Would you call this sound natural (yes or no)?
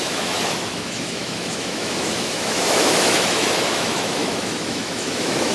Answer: no